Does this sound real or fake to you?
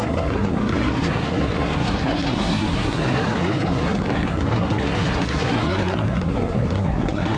fake